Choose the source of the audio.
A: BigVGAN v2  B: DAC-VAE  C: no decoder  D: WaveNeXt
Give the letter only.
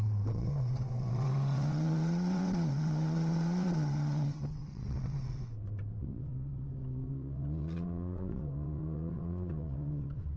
D